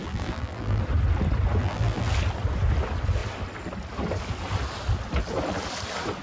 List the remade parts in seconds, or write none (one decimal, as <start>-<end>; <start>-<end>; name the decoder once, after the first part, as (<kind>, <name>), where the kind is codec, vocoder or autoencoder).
0.0-0.8 (vocoder, BigVGAN v2); 1.6-2.1